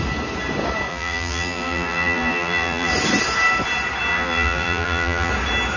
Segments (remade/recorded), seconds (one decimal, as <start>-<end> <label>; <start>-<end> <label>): 0.0-0.9 recorded; 0.9-2.9 remade; 2.9-4.1 recorded; 4.1-5.3 remade; 5.3-5.8 recorded